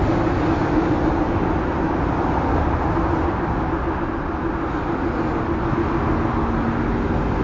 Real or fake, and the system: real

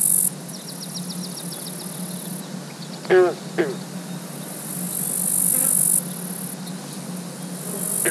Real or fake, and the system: real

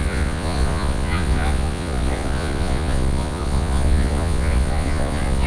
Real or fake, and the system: fake, vocoder, Vocos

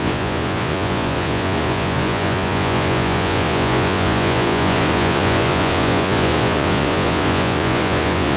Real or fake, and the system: fake, vocoder, Vocos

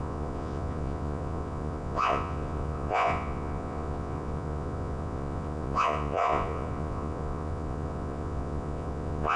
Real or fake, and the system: fake, vocoder, Vocos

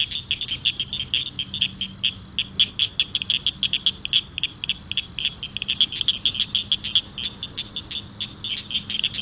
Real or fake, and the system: real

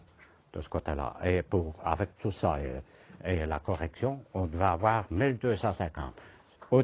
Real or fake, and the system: fake, vocoder, Vocos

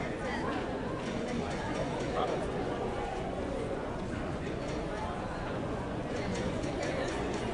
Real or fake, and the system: fake, vocoder, Vocos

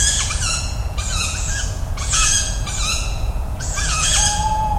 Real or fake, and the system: fake, vocoder, Vocos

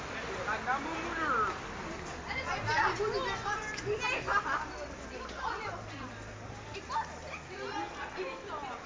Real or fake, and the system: real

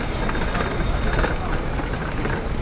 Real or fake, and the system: real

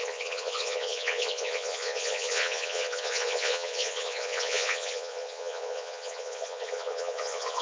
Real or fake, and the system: fake, vocoder, Vocos